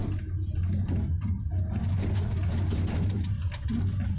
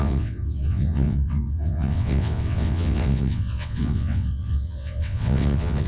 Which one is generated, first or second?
second